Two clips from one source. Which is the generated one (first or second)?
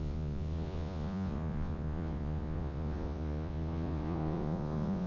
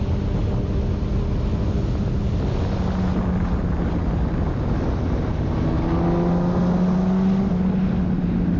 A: first